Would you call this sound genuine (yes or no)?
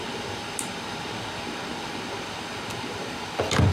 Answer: yes